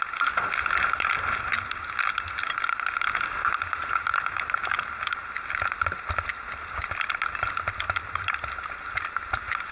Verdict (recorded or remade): recorded